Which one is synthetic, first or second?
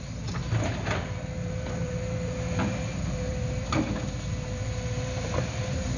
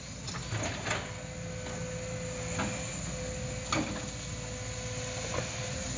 first